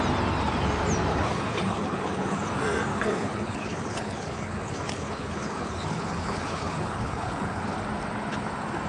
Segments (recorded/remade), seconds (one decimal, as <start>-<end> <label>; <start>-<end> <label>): 0.0-1.1 recorded; 1.1-2.5 remade; 2.5-2.9 recorded; 2.9-7.6 remade; 7.6-8.9 recorded